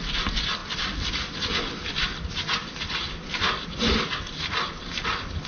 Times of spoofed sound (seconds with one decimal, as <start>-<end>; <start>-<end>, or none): none